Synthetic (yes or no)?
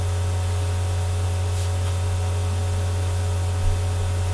no